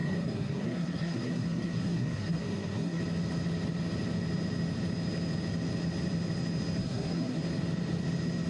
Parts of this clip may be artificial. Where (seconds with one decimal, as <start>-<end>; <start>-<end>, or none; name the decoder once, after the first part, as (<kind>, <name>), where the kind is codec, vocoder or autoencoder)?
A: 0.0-3.0 (codec, SNAC); 6.8-7.4